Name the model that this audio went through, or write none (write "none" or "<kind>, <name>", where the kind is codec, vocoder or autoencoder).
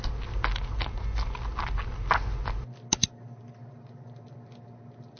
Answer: none